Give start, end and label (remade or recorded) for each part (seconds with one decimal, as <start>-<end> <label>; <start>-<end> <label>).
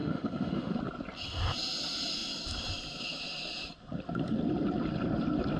0.0-0.8 remade; 0.8-5.6 recorded